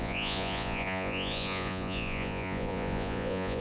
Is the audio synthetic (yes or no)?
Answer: yes